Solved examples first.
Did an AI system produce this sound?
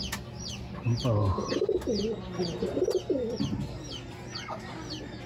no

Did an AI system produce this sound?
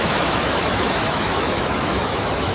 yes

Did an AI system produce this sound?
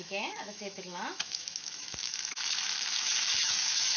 yes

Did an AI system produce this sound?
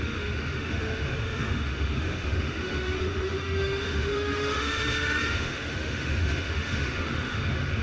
yes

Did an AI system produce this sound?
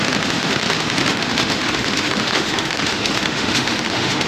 yes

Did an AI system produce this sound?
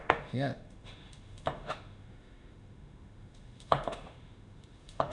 yes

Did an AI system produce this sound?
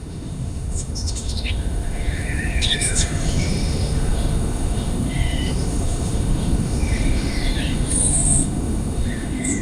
yes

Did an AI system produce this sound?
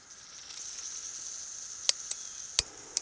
no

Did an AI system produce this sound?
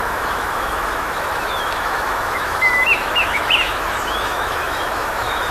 yes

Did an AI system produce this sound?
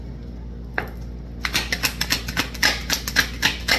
no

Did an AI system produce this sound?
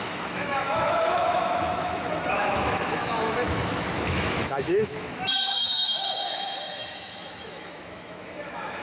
yes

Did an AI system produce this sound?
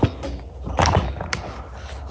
no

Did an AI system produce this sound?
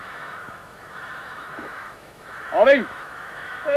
yes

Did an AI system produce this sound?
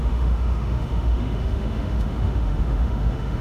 yes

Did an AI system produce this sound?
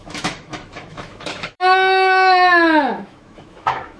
yes